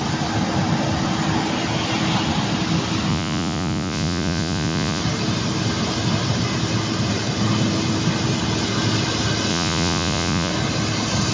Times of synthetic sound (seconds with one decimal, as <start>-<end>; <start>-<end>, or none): 3.1-5.0; 9.5-10.5